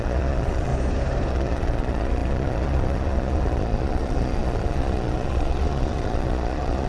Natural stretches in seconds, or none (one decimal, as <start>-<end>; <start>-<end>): 0.7-1.3